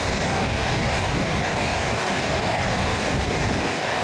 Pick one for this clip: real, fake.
fake